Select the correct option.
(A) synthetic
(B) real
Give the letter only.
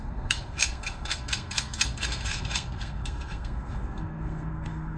A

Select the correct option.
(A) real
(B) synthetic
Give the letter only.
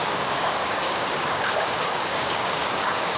B